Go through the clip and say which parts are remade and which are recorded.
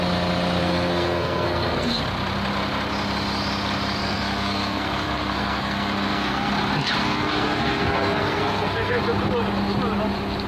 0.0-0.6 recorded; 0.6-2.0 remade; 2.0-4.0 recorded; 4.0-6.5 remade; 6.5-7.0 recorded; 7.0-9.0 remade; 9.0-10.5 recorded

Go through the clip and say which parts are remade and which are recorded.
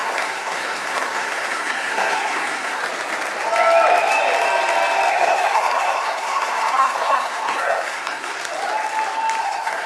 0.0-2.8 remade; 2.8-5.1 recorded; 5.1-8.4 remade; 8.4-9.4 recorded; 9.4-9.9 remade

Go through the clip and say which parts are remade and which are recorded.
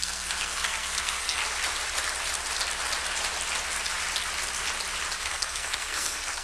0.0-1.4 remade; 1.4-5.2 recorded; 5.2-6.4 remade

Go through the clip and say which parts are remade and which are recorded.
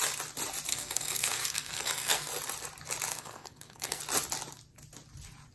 0.0-0.7 recorded; 0.7-2.3 remade; 2.3-3.1 recorded; 3.1-4.0 remade; 4.0-5.5 recorded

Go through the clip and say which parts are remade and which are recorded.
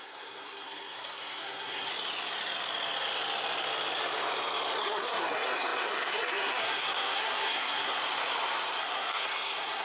0.0-1.9 remade; 1.9-4.8 recorded; 4.8-8.0 remade; 8.0-8.8 recorded; 8.8-9.8 remade